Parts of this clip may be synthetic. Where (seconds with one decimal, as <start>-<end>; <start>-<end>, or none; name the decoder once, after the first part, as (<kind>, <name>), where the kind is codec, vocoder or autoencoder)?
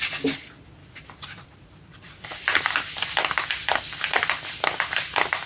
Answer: 0.8-4.1 (vocoder, BigVGAN v2)